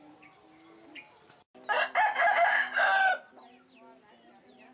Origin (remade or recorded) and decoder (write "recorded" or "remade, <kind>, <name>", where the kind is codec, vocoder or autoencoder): recorded